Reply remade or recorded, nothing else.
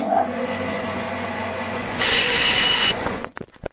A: remade